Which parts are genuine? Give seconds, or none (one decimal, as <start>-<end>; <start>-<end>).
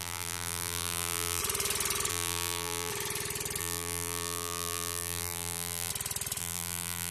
1.4-2.1; 2.9-3.6; 5.9-6.4